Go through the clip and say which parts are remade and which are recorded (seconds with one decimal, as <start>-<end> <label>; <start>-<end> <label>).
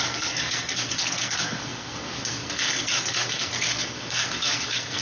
0.0-5.0 remade